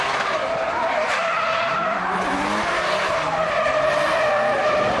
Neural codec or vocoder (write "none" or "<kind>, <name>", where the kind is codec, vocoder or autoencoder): none